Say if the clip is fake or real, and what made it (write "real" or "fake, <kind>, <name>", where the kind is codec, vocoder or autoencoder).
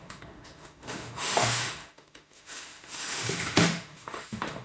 fake, autoencoder, DAC-VAE